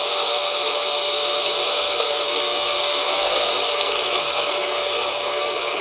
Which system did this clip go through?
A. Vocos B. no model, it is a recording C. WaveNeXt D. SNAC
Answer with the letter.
D